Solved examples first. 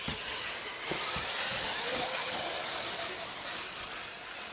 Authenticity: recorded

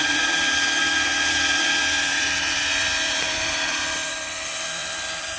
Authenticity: remade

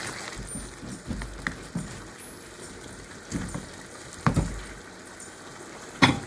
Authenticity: recorded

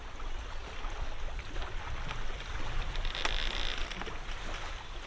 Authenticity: recorded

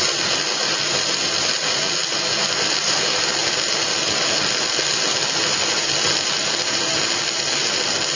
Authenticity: remade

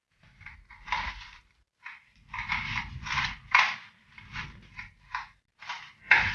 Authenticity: remade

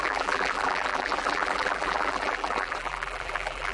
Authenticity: remade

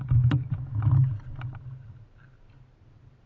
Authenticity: recorded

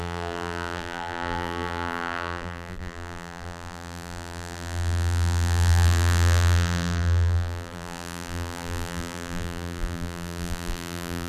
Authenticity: remade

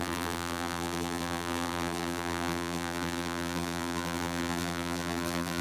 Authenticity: remade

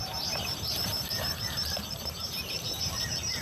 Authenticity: remade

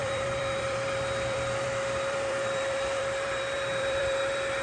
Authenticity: remade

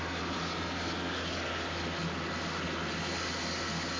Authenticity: recorded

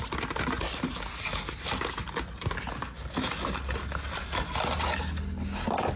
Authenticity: recorded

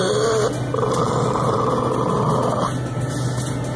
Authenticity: recorded